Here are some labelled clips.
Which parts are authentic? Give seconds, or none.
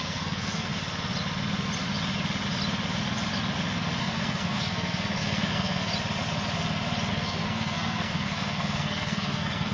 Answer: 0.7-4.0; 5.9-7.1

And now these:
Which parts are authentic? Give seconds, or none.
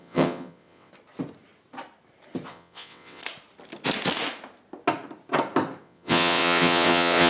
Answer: 0.9-2.5; 3.2-5.8